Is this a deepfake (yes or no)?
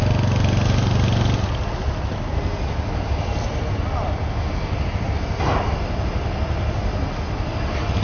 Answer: no